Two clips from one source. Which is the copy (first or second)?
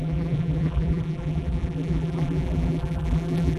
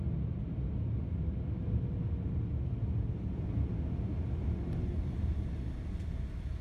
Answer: first